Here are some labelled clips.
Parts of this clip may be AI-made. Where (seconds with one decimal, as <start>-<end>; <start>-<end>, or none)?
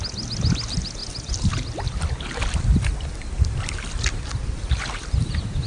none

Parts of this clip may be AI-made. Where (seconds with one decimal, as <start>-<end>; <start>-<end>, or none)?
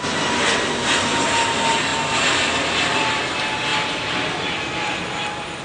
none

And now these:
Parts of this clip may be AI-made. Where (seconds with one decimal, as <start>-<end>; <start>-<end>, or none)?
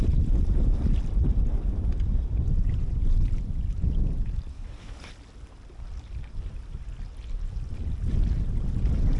4.5-5.1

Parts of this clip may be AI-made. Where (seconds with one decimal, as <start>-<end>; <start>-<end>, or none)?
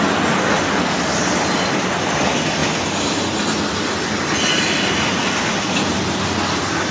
none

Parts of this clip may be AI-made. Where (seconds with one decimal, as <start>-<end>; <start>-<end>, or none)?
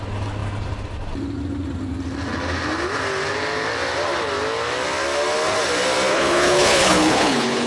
6.1-7.7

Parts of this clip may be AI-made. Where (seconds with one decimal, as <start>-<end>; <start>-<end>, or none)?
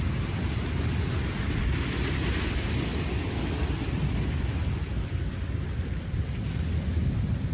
none